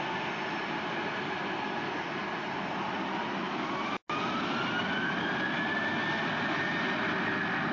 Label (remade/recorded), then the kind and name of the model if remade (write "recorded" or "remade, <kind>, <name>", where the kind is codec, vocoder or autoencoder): recorded